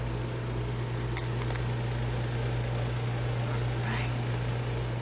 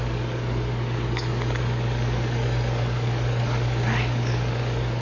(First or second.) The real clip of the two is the first